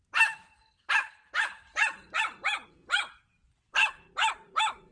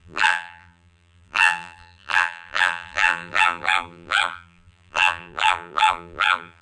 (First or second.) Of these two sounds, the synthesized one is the second